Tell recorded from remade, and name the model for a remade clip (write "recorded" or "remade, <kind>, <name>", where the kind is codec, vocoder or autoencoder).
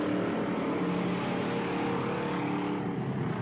recorded